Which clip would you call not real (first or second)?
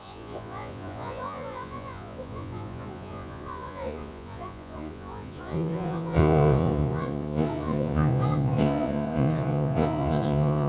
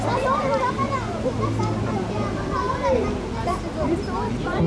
first